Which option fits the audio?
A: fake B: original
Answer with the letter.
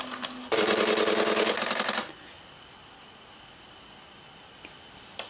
B